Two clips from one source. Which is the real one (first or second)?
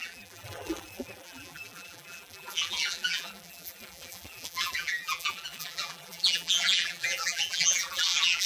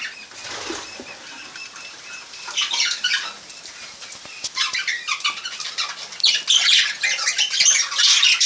second